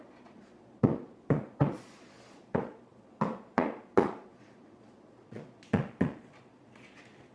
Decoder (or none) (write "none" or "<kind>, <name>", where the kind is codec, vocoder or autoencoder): vocoder, Vocos